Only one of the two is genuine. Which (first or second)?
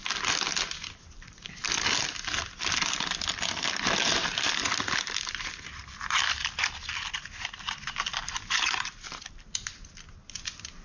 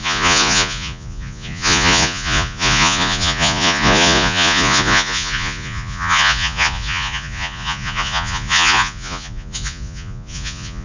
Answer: first